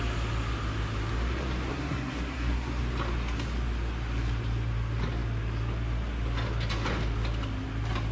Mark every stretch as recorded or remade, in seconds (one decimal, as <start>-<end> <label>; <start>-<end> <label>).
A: 0.0-1.7 recorded; 1.7-2.8 remade; 2.8-8.1 recorded